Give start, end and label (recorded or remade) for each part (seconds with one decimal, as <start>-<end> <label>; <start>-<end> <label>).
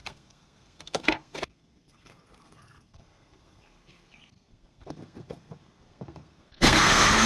0.0-7.3 remade